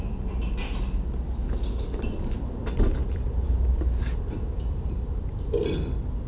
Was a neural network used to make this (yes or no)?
no